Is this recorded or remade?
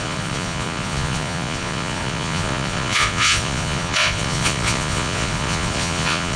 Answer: remade